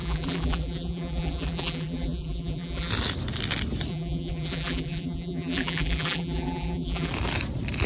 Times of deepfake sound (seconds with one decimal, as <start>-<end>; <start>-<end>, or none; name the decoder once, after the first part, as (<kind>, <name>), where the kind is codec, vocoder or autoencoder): 0.0-2.9 (vocoder, BigVGAN v2); 3.9-7.1

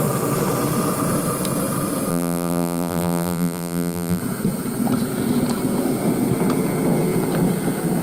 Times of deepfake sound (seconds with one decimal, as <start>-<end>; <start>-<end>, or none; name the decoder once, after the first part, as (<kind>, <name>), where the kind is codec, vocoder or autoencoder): 2.1-4.2 (vocoder, BigVGAN v2)